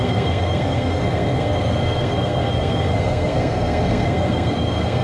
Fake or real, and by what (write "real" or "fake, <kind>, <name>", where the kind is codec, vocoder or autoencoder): fake, codec, SNAC